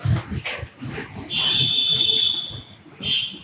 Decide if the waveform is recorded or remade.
recorded